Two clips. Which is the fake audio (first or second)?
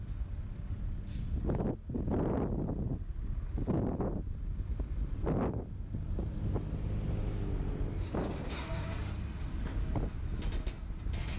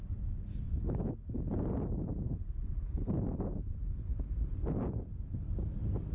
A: second